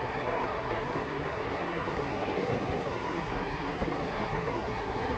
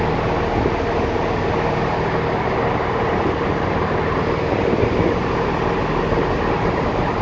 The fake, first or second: first